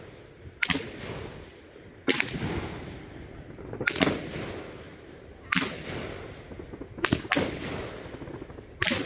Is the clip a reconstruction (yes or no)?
no